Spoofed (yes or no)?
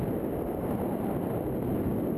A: no